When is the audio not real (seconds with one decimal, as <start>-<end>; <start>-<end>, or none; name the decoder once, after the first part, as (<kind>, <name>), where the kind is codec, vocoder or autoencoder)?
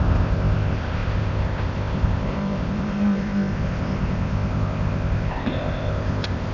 0.0-6.5 (codec, ZipCodec)